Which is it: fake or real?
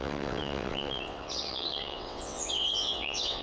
fake